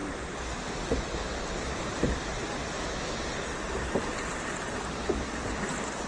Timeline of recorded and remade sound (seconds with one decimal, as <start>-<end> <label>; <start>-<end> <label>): 0.0-6.1 recorded